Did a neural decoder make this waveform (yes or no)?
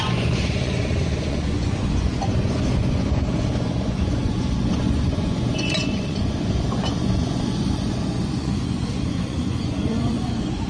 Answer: yes